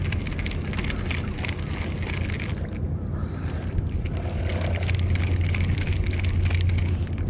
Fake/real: real